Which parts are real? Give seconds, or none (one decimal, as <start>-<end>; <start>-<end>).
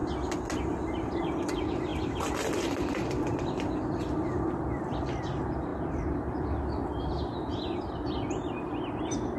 0.0-1.0